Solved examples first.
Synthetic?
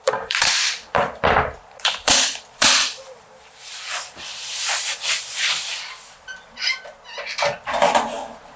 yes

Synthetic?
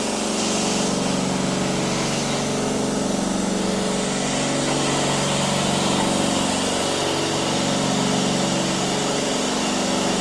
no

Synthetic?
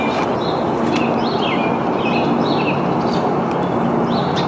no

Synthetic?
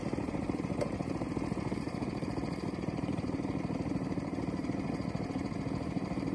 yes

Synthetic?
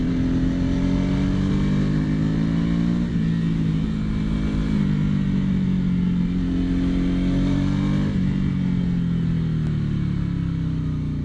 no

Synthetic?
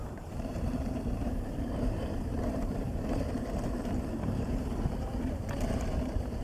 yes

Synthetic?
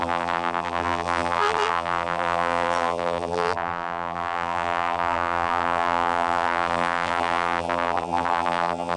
yes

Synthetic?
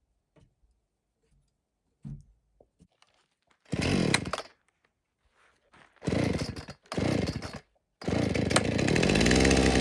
no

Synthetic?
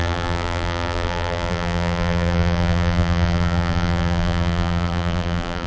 yes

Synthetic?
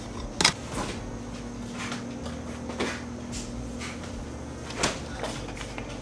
no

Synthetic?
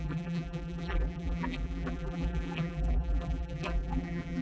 yes